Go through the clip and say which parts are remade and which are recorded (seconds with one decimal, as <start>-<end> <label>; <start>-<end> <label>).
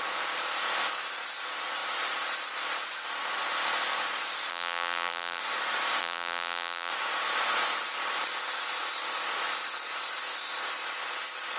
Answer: 0.0-4.5 recorded; 4.5-5.4 remade; 5.4-6.0 recorded; 6.0-6.9 remade; 6.9-11.6 recorded